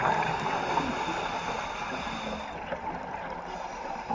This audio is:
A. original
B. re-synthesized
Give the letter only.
A